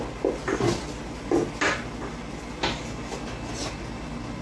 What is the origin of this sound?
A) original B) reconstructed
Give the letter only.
A